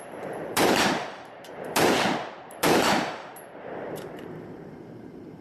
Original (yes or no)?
no